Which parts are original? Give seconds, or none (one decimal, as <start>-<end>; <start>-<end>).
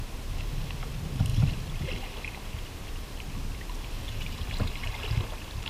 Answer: 0.0-5.7